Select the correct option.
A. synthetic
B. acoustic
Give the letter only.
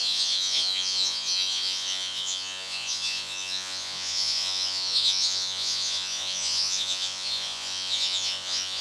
A